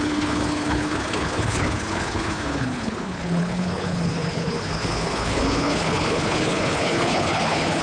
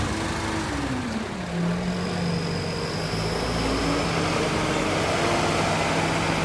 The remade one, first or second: first